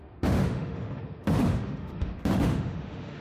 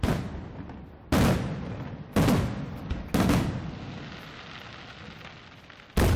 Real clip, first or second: second